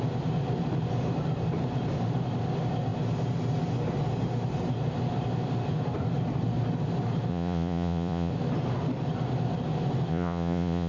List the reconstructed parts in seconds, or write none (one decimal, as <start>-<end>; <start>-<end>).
7.3-8.3; 10.1-10.9